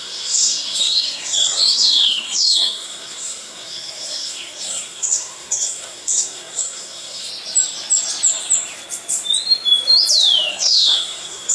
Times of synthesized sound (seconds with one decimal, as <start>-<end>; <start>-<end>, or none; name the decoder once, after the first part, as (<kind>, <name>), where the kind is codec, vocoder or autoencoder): 0.0-7.3 (codec, SNAC); 10.5-11.5